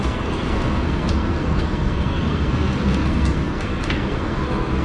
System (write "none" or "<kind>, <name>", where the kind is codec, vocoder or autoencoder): codec, SNAC